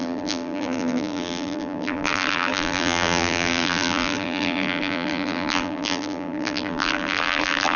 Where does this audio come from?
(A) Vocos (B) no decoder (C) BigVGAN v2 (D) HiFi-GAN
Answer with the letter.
C